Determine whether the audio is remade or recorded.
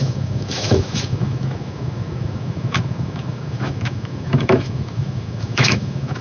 remade